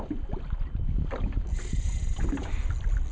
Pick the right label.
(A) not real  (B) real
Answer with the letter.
B